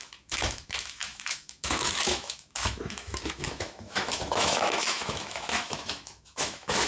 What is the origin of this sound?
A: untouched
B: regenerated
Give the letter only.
B